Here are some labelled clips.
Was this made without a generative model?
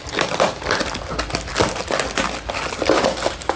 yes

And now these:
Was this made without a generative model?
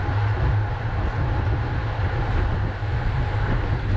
yes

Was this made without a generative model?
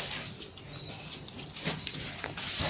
yes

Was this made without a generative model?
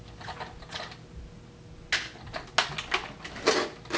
yes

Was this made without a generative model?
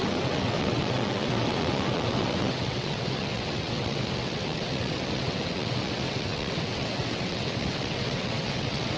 no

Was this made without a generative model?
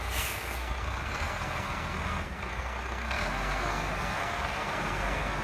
no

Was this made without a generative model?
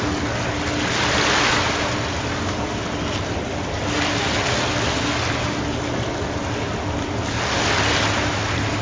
yes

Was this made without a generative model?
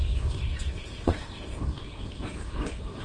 no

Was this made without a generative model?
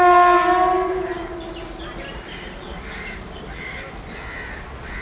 yes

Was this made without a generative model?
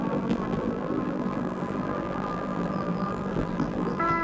no